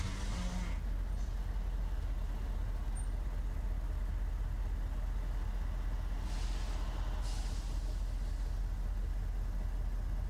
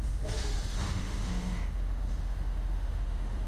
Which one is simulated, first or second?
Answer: second